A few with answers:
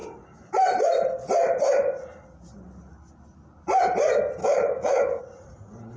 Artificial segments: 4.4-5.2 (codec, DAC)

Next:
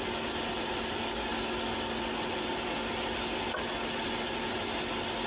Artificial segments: none

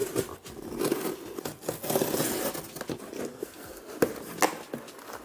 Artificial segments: 3.3-3.8 (codec, SNAC)

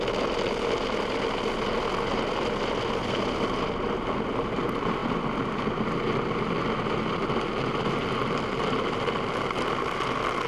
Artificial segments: none

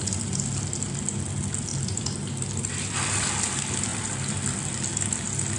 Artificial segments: 1.7-3.3 (vocoder, BigVGAN v2); 3.9-4.7

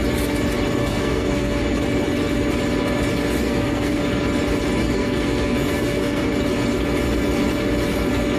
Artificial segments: 0.8-1.6 (codec, SNAC); 3.4-4.0; 4.8-6.3